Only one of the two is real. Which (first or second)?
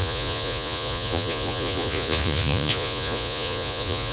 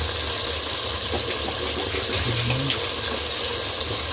second